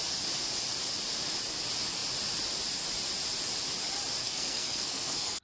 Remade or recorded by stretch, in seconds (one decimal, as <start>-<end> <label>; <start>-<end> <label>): 0.0-4.2 recorded; 4.2-5.4 remade